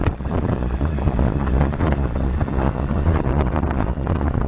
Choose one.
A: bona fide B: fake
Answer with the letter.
B